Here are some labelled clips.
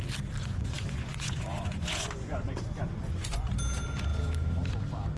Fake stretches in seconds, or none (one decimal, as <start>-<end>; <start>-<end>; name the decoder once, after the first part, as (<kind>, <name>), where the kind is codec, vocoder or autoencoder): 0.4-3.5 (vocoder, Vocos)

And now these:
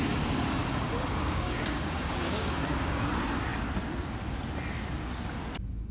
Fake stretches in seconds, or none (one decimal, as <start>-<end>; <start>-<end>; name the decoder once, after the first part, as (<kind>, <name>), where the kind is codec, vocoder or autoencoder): 0.6-3.0 (codec, DAC)

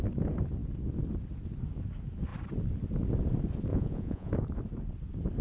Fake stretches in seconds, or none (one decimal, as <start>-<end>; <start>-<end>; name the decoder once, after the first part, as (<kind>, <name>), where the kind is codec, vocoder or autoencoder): 3.7-4.3 (vocoder, Vocos)

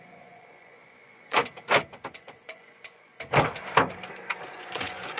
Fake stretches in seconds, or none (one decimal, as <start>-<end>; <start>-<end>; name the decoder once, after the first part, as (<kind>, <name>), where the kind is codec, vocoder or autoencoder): 0.0-1.4 (vocoder, Vocos); 2.1-3.1; 4.5-5.2

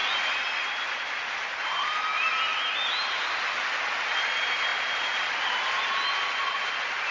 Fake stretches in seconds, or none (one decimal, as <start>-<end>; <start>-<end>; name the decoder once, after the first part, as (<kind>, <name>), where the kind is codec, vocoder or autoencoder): none

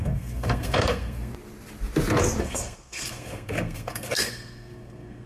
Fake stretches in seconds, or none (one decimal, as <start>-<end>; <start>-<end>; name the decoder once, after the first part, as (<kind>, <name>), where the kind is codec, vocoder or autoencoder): 0.0-1.3 (codec, SNAC); 2.4-5.3

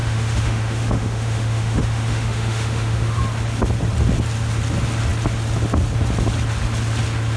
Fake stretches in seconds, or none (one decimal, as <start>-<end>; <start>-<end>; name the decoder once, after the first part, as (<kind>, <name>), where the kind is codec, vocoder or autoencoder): 0.0-3.2 (autoencoder, DAC-VAE)